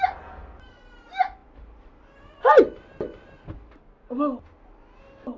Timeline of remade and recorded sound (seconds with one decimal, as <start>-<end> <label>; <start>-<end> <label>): 0.0-5.4 recorded